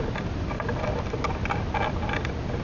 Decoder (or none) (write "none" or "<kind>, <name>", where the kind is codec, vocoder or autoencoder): none